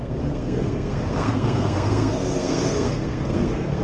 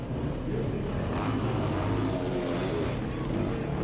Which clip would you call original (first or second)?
second